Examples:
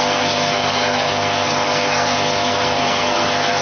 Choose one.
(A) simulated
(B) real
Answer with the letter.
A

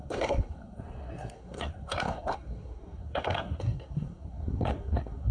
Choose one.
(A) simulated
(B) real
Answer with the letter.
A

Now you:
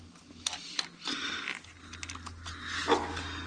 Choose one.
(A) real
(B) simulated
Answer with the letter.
A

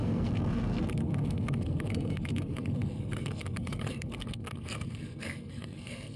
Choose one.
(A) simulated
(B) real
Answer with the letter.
A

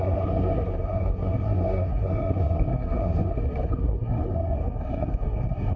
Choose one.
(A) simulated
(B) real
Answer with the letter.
A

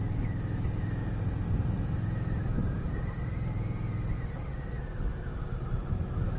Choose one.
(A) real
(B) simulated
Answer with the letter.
A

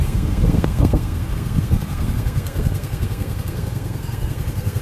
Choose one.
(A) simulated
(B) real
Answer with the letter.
A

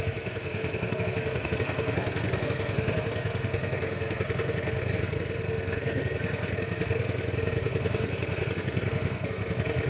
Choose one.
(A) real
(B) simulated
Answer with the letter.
B